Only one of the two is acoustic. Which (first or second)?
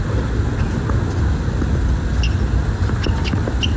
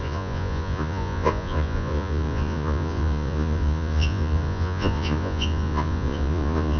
first